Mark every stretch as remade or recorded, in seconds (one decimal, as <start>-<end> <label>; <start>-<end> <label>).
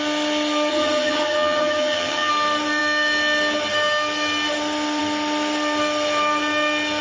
0.0-0.7 recorded; 0.7-2.3 remade; 2.3-7.0 recorded